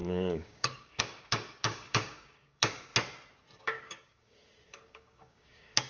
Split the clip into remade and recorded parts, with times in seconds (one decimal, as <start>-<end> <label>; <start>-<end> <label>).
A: 0.0-2.9 remade; 2.9-3.6 recorded; 3.6-5.9 remade